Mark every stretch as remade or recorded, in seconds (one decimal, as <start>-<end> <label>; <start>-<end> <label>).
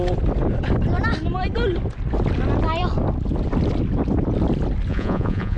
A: 0.0-4.9 recorded; 4.9-5.6 remade